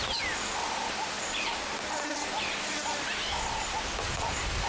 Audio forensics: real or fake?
real